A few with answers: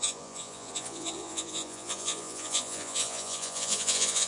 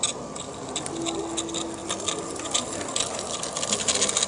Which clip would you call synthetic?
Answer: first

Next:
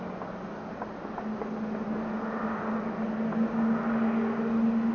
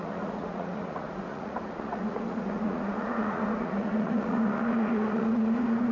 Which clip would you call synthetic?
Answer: second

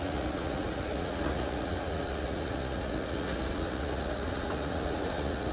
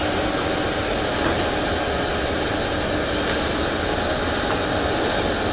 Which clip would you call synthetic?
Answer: first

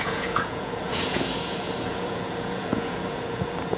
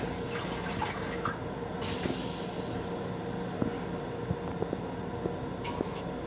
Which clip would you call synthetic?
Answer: first